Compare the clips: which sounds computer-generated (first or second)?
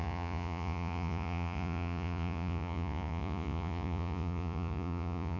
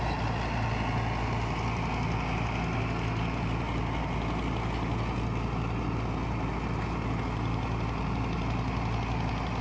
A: first